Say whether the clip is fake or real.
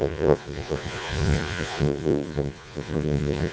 fake